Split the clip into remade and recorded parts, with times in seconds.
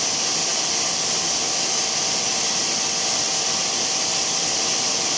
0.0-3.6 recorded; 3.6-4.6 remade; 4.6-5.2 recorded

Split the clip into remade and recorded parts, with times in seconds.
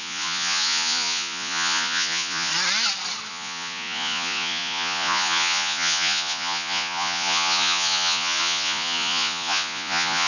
0.0-2.5 remade; 2.5-3.3 recorded; 3.3-10.3 remade